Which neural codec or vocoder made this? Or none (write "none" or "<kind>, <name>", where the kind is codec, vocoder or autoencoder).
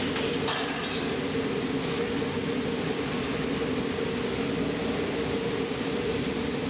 none